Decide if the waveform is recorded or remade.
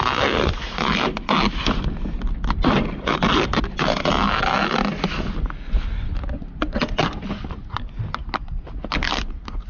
recorded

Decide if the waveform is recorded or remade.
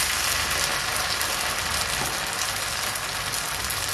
recorded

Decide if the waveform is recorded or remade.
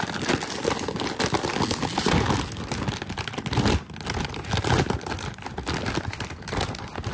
recorded